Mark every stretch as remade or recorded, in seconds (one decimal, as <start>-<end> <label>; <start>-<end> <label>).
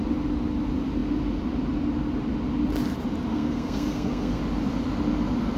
0.0-3.3 recorded; 3.3-4.4 remade; 4.4-5.6 recorded